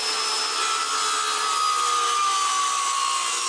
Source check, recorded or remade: recorded